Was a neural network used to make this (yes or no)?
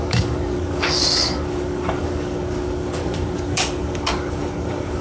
yes